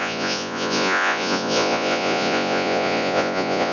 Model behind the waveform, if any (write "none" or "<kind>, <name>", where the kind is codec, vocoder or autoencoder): vocoder, Vocos